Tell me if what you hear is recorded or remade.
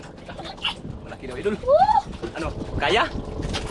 recorded